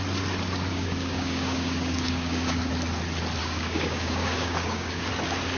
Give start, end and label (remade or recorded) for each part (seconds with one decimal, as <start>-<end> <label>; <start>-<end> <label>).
0.0-0.7 recorded; 0.7-2.7 remade; 2.7-3.4 recorded; 3.4-5.1 remade; 5.1-5.6 recorded